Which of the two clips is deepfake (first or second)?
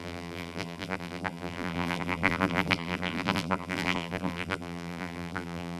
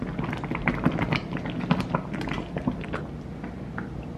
first